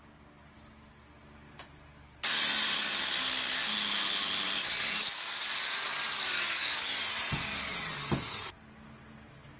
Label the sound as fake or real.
real